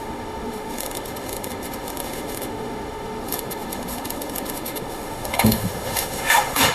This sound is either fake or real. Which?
fake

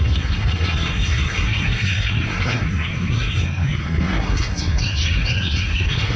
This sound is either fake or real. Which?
fake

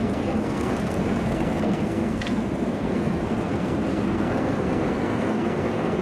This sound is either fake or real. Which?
fake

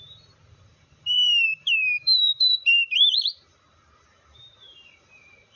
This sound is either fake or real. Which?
fake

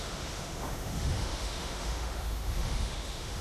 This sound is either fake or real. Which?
fake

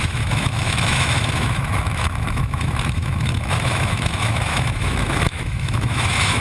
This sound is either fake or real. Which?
fake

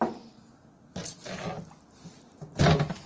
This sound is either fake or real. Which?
real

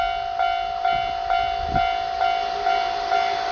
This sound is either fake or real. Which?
real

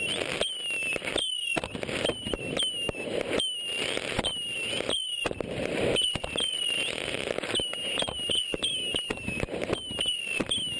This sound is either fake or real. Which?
real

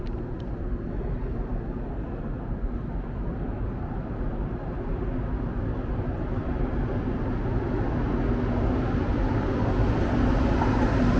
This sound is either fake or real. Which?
real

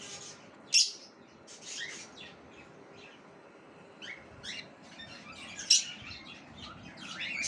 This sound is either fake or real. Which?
real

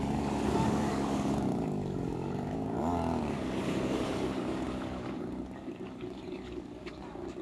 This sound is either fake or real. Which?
fake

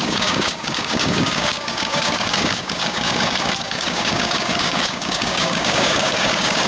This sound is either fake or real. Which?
fake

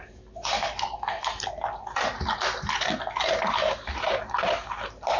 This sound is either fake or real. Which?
real